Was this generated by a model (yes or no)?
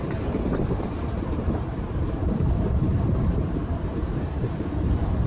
yes